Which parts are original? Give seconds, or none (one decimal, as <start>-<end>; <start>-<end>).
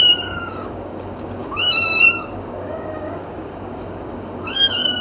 none